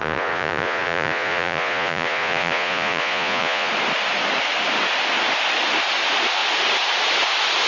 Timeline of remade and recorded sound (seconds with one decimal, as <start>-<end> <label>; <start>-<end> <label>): 0.0-3.7 remade; 3.7-7.7 recorded